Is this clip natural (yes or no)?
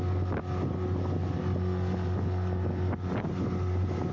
yes